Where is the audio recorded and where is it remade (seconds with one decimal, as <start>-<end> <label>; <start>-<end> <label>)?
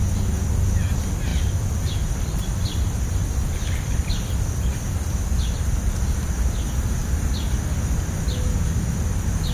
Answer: 0.0-1.3 recorded; 1.3-4.0 remade; 4.0-9.5 recorded